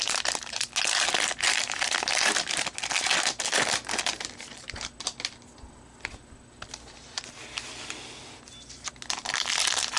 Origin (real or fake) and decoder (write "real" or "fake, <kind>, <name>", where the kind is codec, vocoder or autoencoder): real